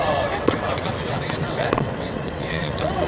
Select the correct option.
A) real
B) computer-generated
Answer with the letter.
B